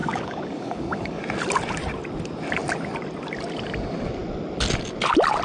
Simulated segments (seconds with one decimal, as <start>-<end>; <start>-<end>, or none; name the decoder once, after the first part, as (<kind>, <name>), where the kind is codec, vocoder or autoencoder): 0.0-1.2 (codec, DAC)